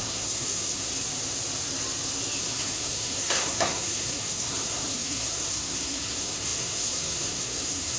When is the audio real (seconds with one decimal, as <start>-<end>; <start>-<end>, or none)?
0.9-2.4